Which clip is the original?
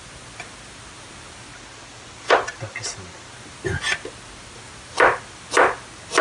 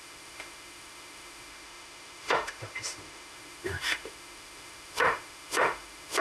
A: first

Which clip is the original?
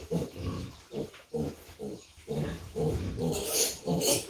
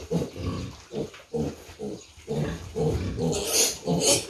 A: second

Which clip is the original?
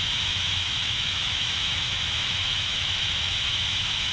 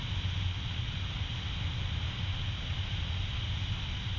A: second